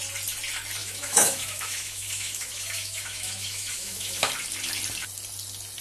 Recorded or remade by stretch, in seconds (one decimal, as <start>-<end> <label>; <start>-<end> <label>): 0.0-0.8 recorded; 0.8-4.3 remade; 4.3-5.8 recorded